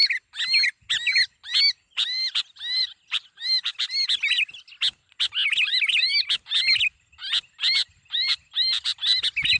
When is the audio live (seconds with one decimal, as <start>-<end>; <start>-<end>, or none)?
0.0-9.6